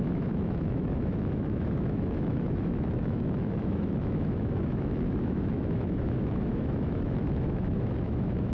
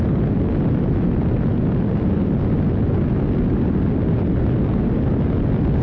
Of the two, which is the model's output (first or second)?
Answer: first